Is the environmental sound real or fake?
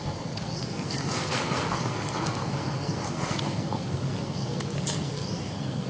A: fake